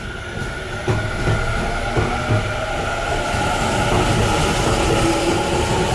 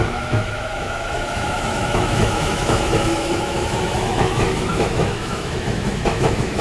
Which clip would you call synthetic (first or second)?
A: second